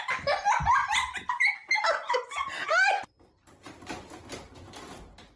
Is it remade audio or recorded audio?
recorded